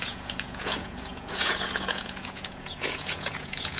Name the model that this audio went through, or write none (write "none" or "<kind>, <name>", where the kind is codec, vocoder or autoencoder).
vocoder, Vocos